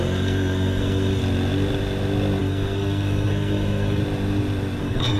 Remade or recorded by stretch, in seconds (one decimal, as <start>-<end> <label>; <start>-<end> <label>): 0.0-1.2 remade; 1.2-2.4 recorded; 2.4-4.0 remade; 4.0-4.8 recorded; 4.8-5.2 remade